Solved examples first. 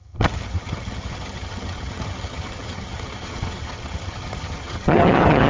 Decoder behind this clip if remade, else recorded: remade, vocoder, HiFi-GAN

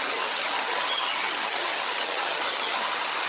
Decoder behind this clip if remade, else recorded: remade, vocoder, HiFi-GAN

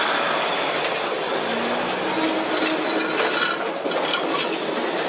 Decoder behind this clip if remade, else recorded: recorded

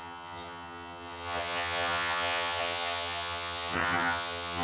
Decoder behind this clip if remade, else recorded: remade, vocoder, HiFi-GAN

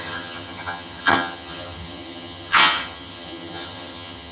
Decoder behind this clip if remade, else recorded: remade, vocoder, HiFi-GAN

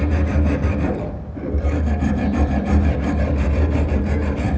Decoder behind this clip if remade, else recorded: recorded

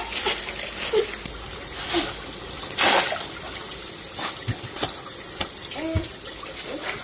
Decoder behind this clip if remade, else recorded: recorded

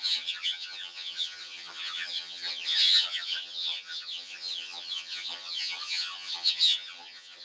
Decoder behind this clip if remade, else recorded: remade, vocoder, HiFi-GAN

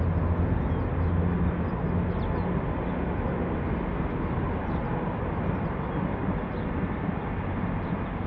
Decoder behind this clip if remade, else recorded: recorded